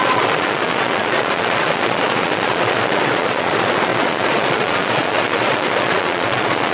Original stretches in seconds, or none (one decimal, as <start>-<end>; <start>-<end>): none